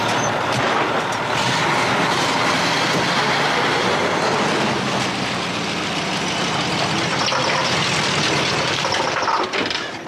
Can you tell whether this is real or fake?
real